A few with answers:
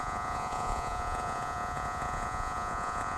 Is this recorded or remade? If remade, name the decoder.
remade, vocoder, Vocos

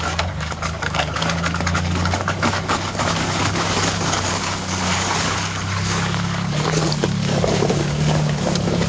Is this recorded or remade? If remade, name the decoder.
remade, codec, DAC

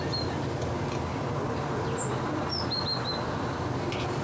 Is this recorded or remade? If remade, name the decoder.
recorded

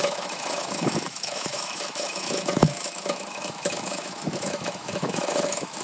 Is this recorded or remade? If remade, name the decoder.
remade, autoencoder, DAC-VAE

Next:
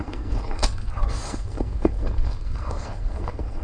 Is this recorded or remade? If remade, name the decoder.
remade, codec, SNAC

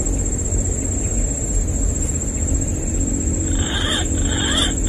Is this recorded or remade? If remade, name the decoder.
recorded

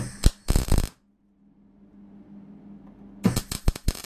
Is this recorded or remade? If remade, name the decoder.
recorded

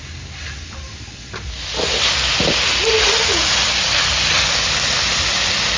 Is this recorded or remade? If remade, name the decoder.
recorded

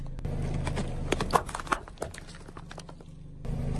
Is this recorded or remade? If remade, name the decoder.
recorded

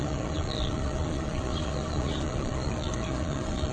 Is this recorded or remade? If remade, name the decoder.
remade, vocoder, Vocos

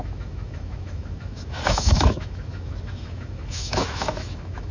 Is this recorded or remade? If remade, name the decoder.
remade, autoencoder, DAC-VAE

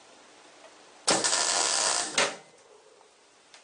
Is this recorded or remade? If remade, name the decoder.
recorded